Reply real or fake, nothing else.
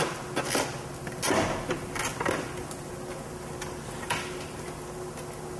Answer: real